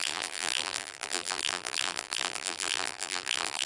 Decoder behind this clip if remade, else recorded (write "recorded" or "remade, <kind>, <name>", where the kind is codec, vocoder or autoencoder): remade, vocoder, BigVGAN v2